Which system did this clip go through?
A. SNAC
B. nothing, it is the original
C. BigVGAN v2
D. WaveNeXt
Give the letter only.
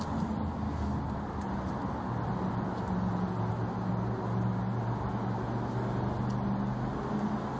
B